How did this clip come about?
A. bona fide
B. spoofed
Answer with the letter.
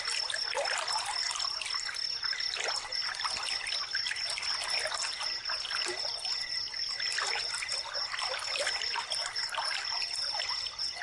A